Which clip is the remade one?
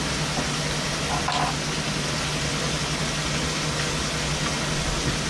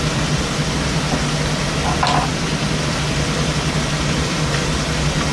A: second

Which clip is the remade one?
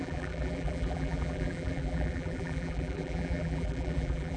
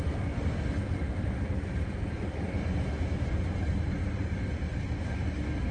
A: first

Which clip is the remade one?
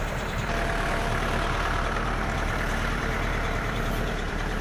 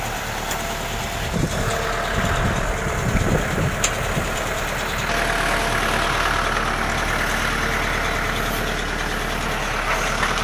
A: first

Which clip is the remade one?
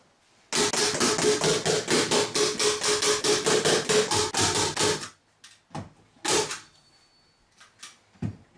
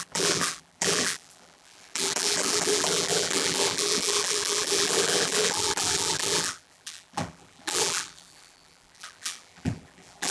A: second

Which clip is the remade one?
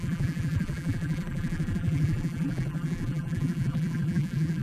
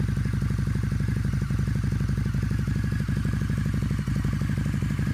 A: first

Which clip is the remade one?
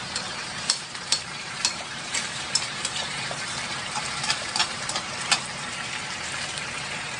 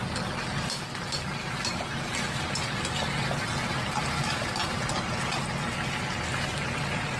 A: first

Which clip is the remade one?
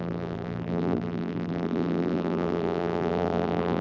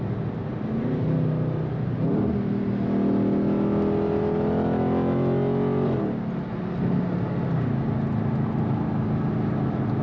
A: first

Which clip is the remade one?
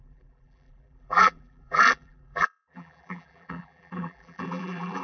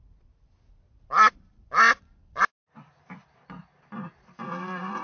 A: first